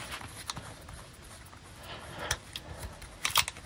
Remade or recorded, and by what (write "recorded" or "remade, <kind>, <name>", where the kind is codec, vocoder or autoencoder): recorded